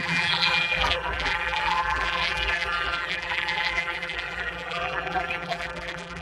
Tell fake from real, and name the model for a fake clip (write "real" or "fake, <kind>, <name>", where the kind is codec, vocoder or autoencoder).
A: fake, vocoder, BigVGAN v2